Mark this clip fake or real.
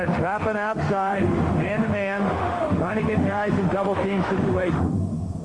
fake